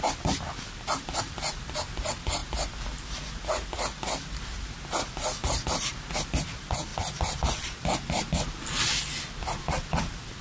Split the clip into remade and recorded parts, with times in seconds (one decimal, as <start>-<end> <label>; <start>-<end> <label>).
0.0-10.4 recorded